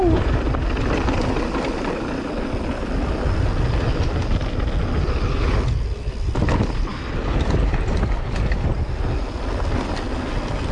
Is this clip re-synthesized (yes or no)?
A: no